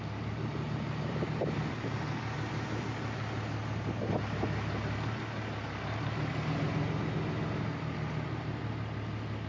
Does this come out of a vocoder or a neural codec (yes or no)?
no